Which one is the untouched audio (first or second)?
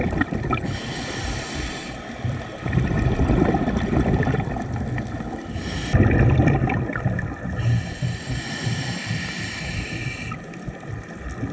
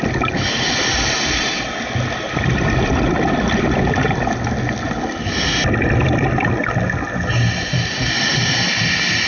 second